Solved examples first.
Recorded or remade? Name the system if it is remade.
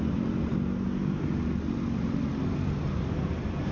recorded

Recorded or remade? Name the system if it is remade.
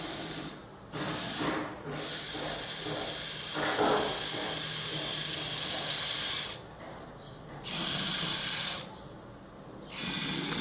recorded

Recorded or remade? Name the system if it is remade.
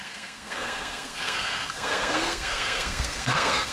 remade, codec, SNAC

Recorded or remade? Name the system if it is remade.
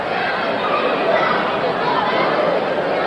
recorded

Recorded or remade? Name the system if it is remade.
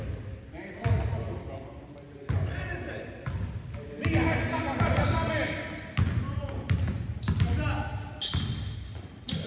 recorded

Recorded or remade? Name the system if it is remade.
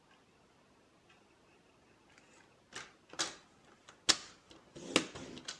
recorded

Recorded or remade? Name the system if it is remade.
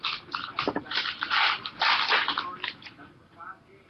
recorded